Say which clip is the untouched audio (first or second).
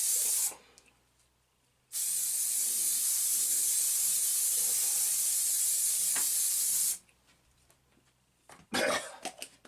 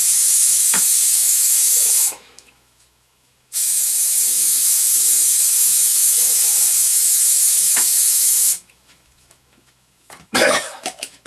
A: first